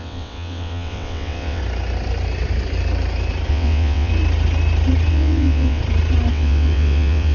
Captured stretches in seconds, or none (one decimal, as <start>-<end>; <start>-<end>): 1.6-3.5; 4.1-5.1; 5.8-6.3